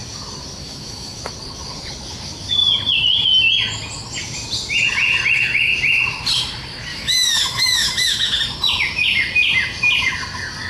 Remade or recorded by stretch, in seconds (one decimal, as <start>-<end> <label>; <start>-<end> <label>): 0.0-0.6 recorded; 0.6-1.2 remade; 1.2-6.9 recorded; 6.9-8.4 remade; 8.4-10.7 recorded